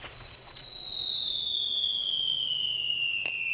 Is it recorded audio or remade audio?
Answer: remade